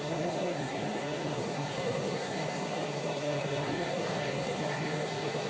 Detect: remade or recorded remade